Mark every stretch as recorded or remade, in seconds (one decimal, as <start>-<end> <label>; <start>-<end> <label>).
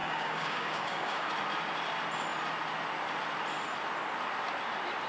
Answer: 0.0-1.3 remade; 1.3-5.1 recorded